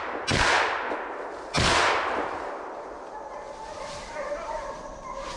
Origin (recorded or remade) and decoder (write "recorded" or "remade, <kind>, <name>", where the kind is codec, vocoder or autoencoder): recorded